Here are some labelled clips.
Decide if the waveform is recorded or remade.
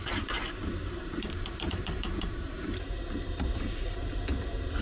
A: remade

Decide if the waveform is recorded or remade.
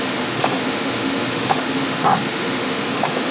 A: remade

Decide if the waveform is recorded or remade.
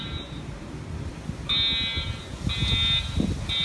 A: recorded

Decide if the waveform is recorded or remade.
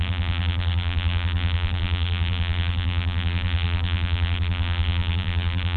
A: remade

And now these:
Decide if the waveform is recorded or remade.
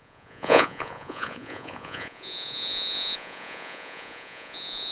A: remade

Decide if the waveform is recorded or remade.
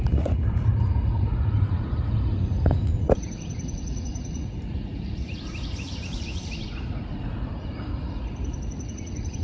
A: remade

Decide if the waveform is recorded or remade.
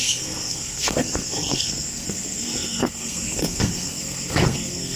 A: remade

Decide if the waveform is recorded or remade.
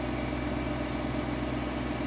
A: recorded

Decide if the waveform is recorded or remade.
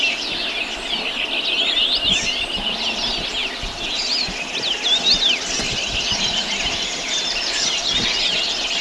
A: recorded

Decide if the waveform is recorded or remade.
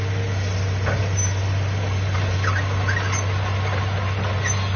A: recorded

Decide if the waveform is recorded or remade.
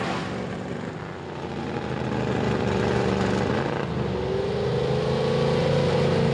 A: recorded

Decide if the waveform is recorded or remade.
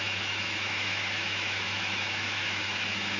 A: remade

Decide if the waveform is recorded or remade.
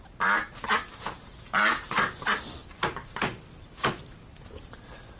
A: recorded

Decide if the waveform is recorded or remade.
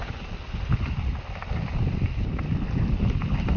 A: recorded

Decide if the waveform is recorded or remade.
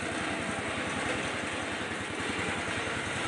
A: recorded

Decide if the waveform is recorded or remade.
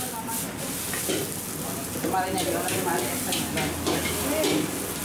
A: recorded